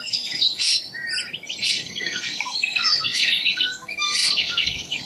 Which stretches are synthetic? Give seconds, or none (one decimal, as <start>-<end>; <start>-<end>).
0.0-0.9; 1.6-5.0